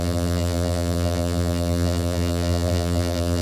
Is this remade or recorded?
remade